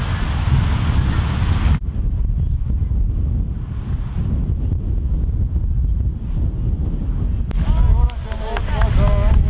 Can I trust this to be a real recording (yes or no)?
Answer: yes